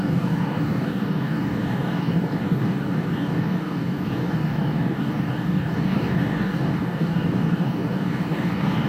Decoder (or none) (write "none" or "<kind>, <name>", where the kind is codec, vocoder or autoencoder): codec, DAC